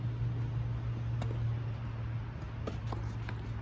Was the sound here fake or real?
real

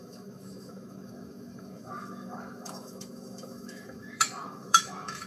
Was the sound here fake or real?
fake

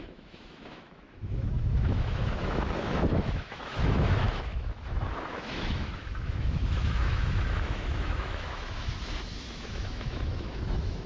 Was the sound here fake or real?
fake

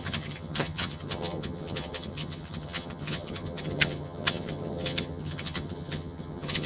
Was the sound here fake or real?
fake